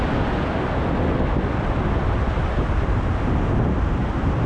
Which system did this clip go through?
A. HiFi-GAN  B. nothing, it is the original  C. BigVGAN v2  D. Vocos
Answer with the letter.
B